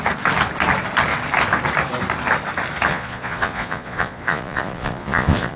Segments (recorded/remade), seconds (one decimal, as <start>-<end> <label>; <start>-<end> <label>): 0.0-2.9 recorded; 2.9-5.6 remade